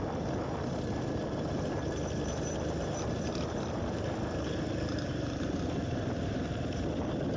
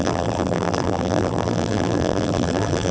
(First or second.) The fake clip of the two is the second